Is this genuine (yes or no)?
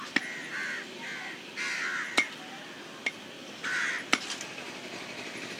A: yes